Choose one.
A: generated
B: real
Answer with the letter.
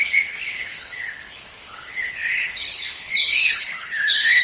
A